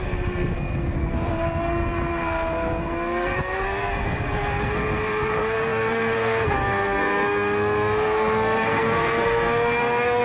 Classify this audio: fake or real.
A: fake